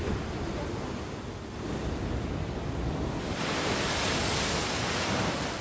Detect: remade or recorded recorded